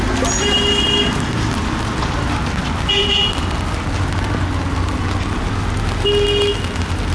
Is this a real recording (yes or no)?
yes